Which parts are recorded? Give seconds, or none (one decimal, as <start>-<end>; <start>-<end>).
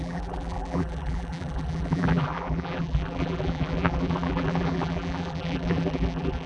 none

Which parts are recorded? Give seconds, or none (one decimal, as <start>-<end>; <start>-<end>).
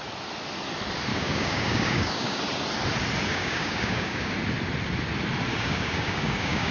0.0-1.1; 2.4-3.3; 4.3-5.5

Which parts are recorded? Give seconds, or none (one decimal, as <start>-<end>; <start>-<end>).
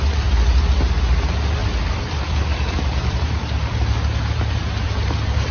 0.0-1.6; 4.9-5.5